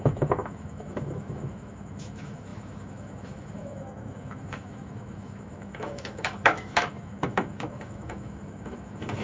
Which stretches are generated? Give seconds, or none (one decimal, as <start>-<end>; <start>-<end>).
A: 0.0-9.2